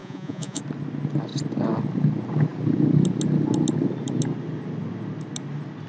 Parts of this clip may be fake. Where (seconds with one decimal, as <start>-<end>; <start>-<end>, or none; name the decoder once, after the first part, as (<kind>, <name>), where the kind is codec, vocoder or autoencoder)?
0.0-0.6 (vocoder, Vocos)